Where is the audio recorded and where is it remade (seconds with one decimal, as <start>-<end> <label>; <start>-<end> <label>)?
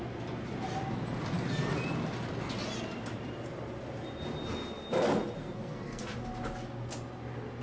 0.0-5.4 recorded; 5.4-6.0 remade; 6.0-7.6 recorded